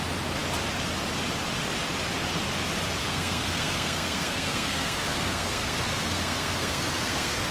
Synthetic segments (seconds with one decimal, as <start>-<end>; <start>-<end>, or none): 3.0-7.5